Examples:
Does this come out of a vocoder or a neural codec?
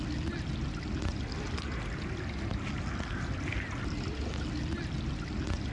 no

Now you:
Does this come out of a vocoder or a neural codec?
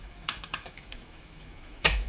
yes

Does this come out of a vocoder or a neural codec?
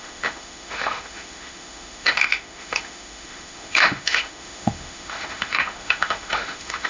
yes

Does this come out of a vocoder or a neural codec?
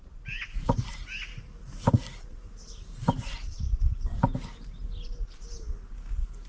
no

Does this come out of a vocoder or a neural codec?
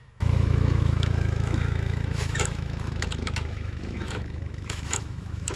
yes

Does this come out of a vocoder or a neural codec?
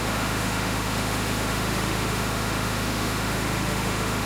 yes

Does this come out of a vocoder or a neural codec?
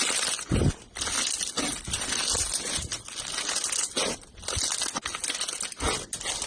no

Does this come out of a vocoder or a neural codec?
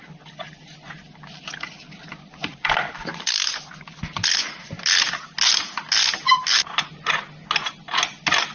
no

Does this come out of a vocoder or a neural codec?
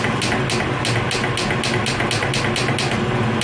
no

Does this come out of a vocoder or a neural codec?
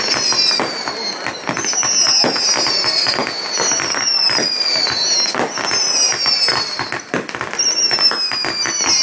no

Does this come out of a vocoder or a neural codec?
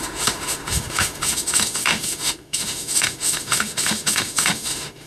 yes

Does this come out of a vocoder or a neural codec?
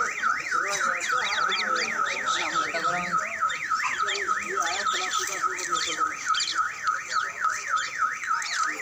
no